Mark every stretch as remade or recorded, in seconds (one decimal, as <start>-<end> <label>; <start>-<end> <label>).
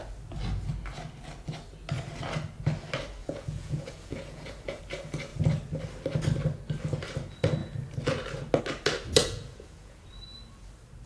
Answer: 0.0-3.2 recorded; 3.2-4.8 remade; 4.8-9.2 recorded; 9.2-10.0 remade; 10.0-11.1 recorded